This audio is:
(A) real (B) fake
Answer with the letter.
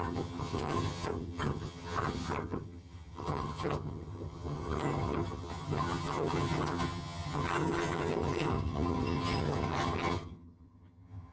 B